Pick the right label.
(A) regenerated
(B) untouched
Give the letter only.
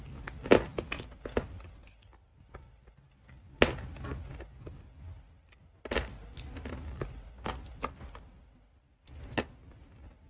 B